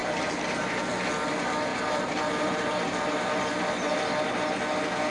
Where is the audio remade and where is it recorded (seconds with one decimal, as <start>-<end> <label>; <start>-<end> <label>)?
0.0-0.7 remade; 0.7-1.7 recorded; 1.7-3.7 remade; 3.7-5.1 recorded